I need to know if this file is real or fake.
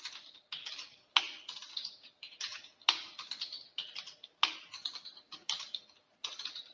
real